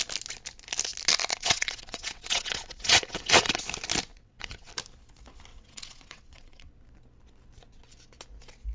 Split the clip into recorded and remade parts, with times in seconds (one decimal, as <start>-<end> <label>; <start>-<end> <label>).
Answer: 0.0-1.3 recorded; 1.3-3.6 remade; 3.6-4.1 recorded; 4.1-4.7 remade; 4.7-5.5 recorded; 5.5-6.7 remade; 6.7-8.7 recorded